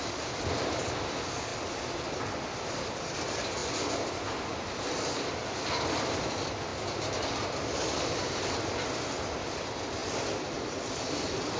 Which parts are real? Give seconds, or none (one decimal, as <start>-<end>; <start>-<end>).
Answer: 6.7-7.3; 10.0-10.6